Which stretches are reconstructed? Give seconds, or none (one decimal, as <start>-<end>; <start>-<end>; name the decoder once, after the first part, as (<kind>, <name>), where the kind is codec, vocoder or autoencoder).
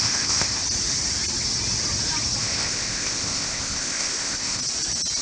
0.0-0.6 (codec, ZipCodec); 2.4-4.6